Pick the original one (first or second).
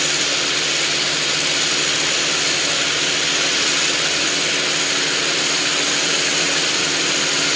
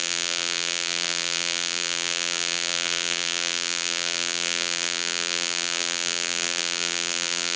first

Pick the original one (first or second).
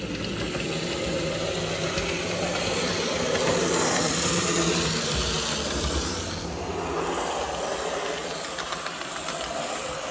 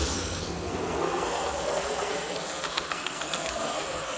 first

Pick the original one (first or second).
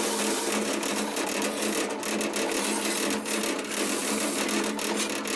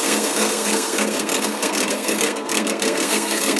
first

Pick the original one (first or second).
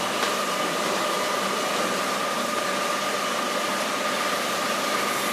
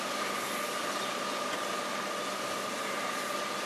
second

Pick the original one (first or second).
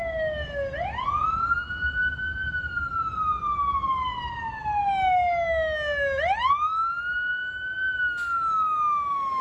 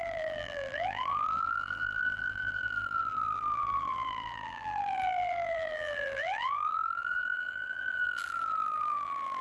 first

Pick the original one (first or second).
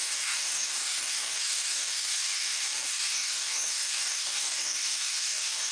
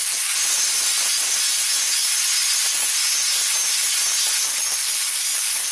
second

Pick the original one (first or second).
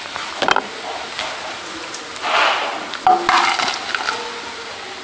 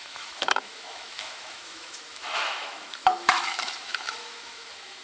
first